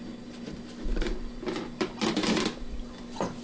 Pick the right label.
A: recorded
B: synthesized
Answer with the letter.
A